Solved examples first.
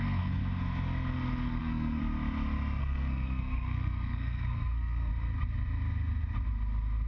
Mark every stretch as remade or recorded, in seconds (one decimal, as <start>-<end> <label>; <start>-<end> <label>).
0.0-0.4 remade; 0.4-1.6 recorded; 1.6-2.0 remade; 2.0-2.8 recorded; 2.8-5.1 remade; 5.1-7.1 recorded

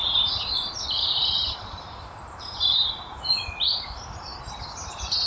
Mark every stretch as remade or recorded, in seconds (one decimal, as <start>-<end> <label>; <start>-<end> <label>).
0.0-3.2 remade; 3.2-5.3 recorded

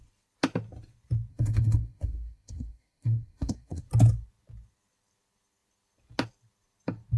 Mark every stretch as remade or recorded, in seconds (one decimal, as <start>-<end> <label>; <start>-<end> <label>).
0.0-1.3 recorded; 1.3-3.8 remade; 3.8-7.2 recorded

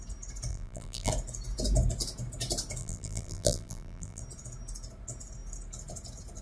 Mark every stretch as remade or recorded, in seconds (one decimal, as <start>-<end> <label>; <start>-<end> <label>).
0.0-0.5 recorded; 0.5-1.1 remade; 1.1-2.8 recorded; 2.8-4.2 remade; 4.2-6.4 recorded

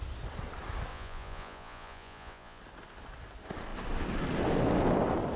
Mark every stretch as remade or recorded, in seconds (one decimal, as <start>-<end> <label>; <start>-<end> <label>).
0.0-0.9 recorded; 0.9-2.6 remade; 2.6-5.4 recorded

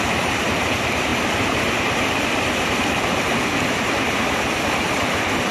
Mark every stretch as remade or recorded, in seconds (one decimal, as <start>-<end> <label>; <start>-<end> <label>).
0.0-5.5 recorded

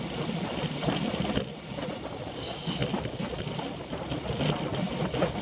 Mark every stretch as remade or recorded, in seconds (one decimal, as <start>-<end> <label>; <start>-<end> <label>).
0.0-5.4 recorded

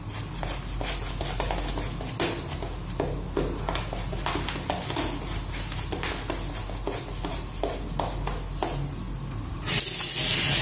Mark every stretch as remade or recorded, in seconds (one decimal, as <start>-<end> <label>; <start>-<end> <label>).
0.0-10.6 recorded